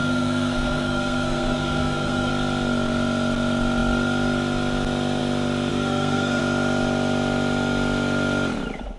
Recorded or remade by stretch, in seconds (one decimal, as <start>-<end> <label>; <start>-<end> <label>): 0.0-2.3 remade; 2.3-5.7 recorded; 5.7-6.4 remade; 6.4-9.0 recorded